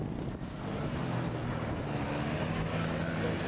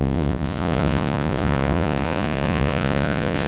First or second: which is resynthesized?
second